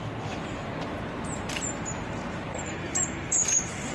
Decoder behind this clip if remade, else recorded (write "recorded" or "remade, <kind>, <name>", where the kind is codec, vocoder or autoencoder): remade, vocoder, BigVGAN v2